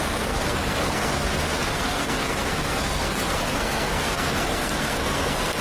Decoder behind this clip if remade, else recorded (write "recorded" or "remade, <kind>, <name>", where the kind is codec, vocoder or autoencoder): remade, codec, SNAC